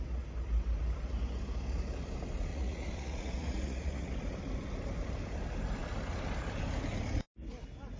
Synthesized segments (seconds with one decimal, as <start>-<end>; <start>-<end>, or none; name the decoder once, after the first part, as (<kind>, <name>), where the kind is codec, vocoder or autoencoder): 2.5-4.1 (vocoder, Vocos)